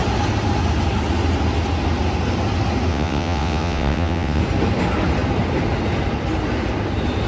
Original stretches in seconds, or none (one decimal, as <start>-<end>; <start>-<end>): 0.0-2.9; 4.4-7.3